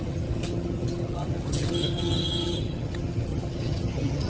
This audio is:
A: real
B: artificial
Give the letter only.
B